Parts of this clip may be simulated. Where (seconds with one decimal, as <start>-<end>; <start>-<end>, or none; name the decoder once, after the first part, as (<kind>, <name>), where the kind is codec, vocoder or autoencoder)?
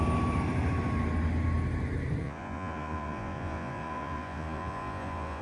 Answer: 2.2-5.4 (vocoder, Vocos)